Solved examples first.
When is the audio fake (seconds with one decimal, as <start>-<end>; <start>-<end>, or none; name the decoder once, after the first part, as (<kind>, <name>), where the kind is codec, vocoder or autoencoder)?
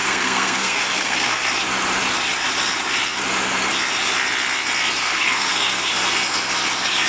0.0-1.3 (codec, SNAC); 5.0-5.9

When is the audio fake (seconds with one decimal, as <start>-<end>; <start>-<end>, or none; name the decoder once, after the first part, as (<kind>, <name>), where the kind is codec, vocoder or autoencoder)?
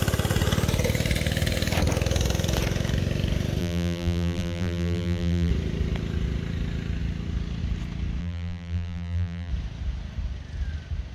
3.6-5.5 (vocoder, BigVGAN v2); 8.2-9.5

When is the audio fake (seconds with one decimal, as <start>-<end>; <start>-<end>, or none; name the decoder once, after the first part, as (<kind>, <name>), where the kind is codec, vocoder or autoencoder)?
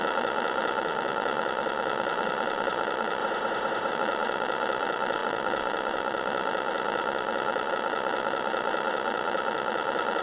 0.0-3.2 (vocoder, Vocos); 3.9-10.2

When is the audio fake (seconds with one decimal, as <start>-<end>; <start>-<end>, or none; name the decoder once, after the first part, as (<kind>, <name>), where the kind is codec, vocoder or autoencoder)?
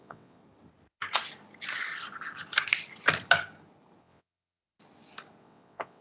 0.0-0.4 (vocoder, WaveNeXt); 4.0-4.6; 5.4-6.0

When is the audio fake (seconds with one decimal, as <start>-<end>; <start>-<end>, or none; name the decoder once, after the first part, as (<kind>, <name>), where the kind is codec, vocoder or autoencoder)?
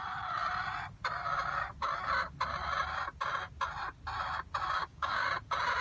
4.8-5.3 (codec, DAC)